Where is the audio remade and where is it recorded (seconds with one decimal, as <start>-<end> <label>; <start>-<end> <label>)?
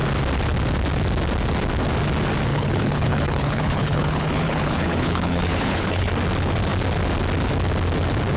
0.0-2.5 recorded; 2.5-6.1 remade; 6.1-8.4 recorded